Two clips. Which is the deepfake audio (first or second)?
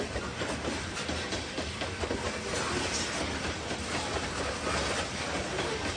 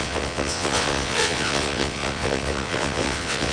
second